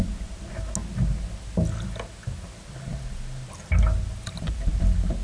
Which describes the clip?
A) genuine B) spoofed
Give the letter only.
A